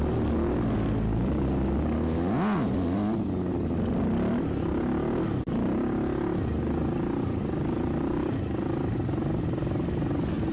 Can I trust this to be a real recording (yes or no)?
yes